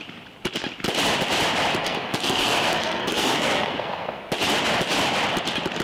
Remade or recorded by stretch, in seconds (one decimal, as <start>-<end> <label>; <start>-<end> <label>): 0.0-1.8 recorded; 1.8-4.3 remade; 4.3-5.8 recorded